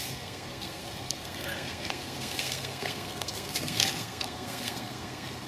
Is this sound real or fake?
fake